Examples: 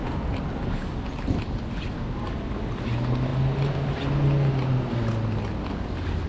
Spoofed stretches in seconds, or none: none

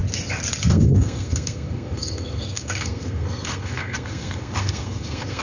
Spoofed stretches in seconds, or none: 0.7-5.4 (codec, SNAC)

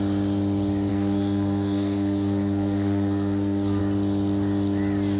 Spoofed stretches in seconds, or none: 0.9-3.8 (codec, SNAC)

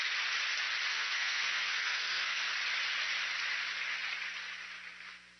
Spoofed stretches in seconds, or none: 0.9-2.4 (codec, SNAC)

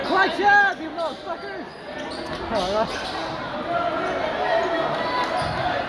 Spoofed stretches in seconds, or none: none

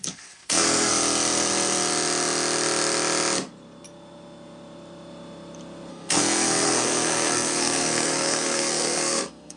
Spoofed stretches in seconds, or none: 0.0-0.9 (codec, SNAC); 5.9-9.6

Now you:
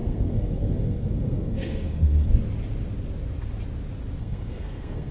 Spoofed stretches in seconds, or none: 0.0-2.3 (codec, SNAC); 4.2-5.1

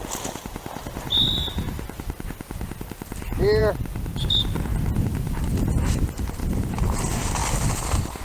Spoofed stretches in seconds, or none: none